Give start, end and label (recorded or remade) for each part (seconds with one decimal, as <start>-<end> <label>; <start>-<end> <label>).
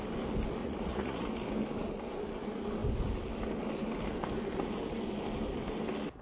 0.0-0.6 recorded; 0.6-1.3 remade; 1.3-6.2 recorded